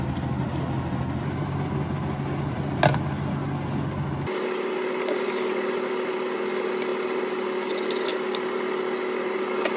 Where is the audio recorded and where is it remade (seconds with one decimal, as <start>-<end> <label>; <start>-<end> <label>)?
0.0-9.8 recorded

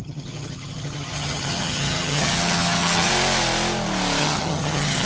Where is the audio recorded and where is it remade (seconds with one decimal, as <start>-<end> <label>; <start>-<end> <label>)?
0.0-3.1 remade; 3.1-4.2 recorded; 4.2-5.1 remade

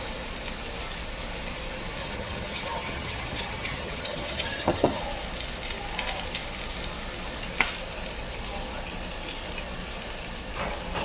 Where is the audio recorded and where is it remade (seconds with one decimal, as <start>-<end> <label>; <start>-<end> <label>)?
0.0-2.0 recorded; 2.0-5.0 remade; 5.0-11.0 recorded

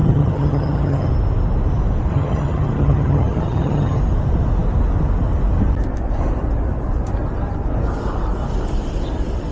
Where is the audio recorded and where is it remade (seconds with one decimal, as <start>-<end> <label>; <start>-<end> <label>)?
0.0-1.1 remade; 1.1-2.1 recorded; 2.1-4.0 remade; 4.0-9.5 recorded